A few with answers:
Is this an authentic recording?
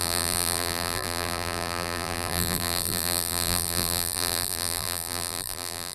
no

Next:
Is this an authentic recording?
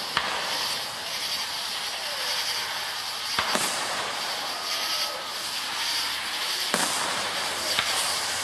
no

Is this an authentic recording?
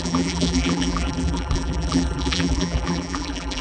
no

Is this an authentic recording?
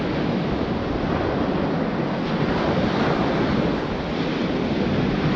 yes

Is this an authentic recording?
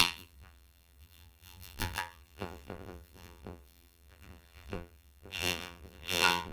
no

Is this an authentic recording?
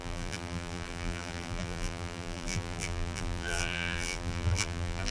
no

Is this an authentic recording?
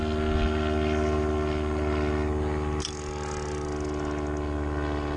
yes